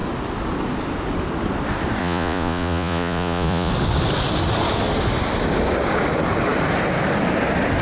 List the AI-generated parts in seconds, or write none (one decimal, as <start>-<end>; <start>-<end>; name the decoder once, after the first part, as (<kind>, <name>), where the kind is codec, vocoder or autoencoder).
2.0-3.7 (vocoder, Vocos)